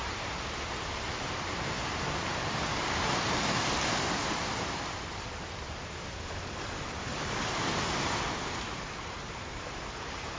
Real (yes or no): no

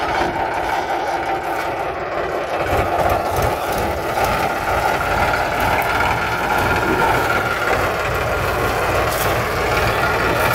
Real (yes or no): yes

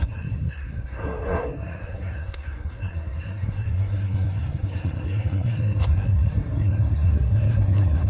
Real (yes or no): no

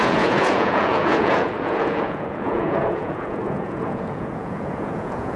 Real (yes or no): no